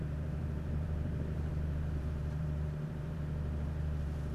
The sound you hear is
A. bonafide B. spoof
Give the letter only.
B